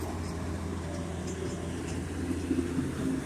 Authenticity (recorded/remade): recorded